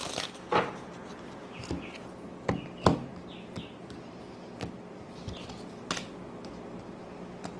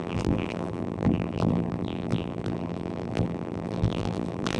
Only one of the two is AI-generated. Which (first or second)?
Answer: second